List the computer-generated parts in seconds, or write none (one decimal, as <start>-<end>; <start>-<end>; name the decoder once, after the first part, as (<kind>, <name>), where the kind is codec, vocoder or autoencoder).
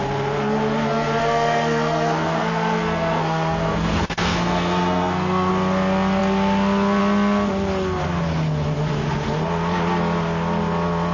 1.2-5.5 (codec, SNAC)